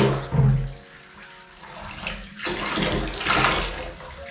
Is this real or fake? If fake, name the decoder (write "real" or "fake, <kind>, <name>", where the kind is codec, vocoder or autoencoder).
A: real